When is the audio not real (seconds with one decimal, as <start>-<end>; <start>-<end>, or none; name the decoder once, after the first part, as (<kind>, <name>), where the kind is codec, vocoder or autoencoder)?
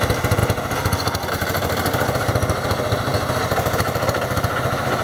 0.0-0.4 (vocoder, BigVGAN v2); 1.3-5.0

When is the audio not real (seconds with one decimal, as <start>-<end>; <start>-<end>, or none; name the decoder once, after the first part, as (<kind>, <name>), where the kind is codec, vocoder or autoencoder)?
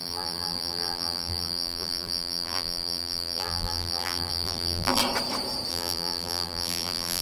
0.0-5.0 (vocoder, BigVGAN v2); 5.7-7.2